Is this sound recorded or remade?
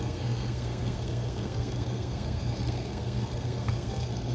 remade